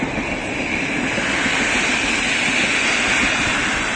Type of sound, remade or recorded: recorded